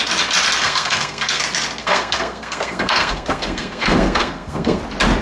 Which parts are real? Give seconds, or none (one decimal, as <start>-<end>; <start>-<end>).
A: 0.0-0.6; 1.4-1.8; 4.8-5.2